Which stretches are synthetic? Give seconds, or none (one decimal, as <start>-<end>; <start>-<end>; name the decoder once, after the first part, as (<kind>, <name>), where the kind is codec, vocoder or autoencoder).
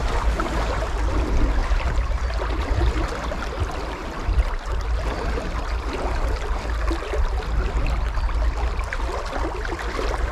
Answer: 1.6-2.8 (vocoder, BigVGAN v2)